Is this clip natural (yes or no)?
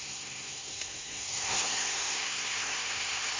no